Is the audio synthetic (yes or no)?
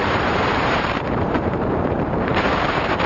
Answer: yes